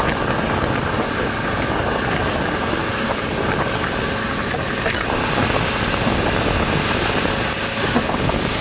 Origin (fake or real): real